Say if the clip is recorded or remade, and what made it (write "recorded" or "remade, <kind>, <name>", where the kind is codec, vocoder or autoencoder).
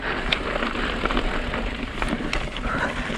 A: recorded